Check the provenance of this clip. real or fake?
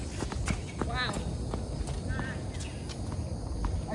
real